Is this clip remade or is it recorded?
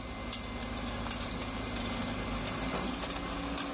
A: recorded